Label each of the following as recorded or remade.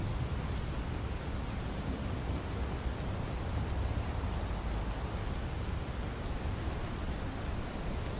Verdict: recorded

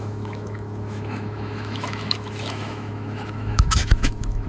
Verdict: remade